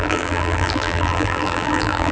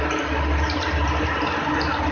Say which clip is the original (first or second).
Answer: second